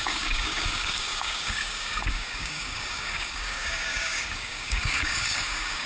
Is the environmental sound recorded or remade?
remade